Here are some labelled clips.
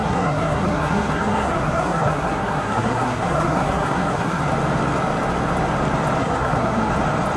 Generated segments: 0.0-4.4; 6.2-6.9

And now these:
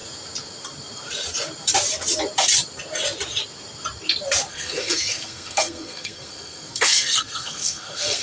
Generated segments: 4.5-8.2

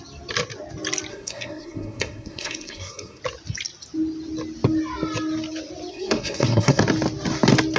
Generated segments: 1.1-3.2; 5.9-6.8

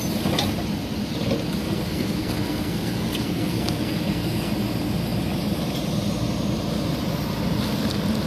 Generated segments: 1.6-4.5

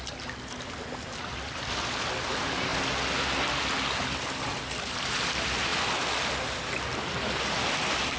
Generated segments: none

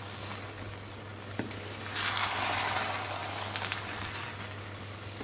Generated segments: none

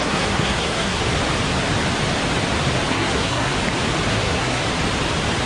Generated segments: 0.0-1.0; 2.9-3.5; 4.1-4.6

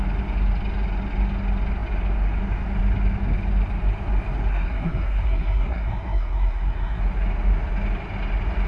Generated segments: 4.5-7.0